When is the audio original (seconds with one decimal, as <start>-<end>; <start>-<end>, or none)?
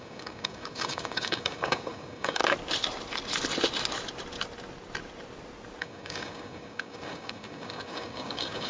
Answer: 2.4-5.8